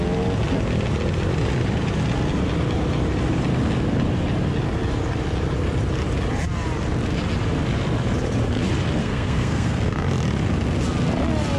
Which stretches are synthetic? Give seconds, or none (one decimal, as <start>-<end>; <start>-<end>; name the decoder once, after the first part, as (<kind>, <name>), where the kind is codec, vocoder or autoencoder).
9.0-10.0 (codec, SNAC)